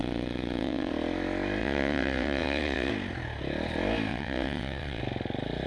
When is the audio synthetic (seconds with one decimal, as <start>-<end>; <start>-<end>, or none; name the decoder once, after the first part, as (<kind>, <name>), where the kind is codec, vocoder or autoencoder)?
0.0-0.9 (vocoder, WaveNeXt); 1.6-2.9; 4.1-5.0